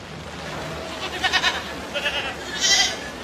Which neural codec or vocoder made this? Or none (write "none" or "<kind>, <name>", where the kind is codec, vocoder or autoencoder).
none